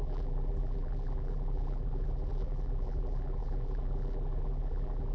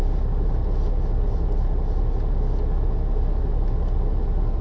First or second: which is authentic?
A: second